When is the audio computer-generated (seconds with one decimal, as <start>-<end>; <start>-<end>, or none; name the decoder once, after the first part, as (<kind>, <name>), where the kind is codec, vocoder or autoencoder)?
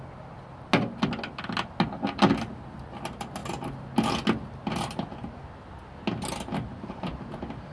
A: none